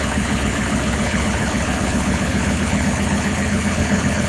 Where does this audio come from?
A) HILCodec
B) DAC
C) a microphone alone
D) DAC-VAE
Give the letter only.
A